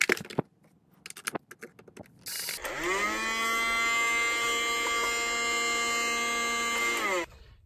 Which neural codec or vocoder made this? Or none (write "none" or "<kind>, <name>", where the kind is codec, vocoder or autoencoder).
none